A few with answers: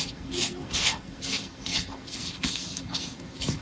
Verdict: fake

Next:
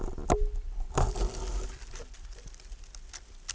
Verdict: real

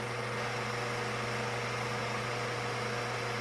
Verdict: real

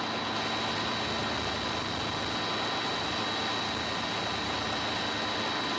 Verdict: real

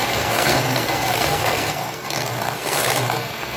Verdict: fake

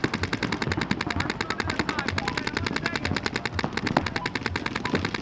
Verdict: real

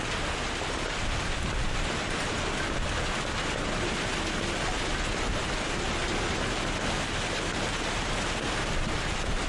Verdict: real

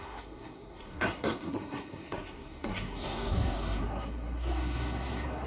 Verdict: fake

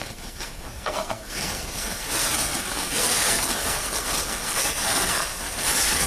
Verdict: fake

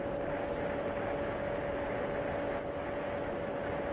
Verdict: real